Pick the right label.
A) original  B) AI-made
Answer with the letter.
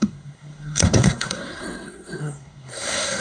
B